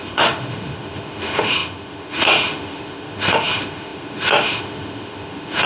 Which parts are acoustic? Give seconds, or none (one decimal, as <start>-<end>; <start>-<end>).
none